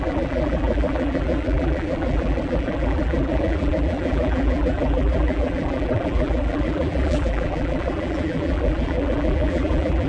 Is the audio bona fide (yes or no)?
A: no